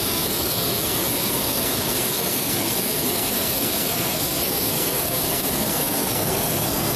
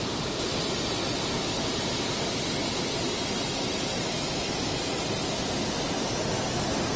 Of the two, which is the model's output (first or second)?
first